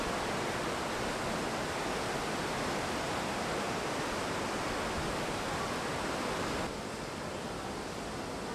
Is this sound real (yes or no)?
yes